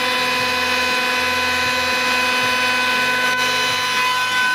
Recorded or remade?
recorded